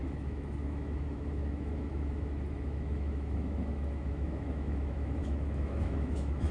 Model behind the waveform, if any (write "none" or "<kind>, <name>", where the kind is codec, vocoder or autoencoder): autoencoder, DAC-VAE